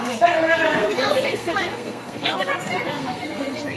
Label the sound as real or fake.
fake